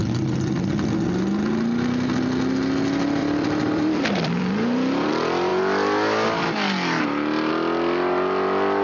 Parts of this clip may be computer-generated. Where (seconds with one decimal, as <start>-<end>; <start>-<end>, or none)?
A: 0.0-0.7; 3.2-5.1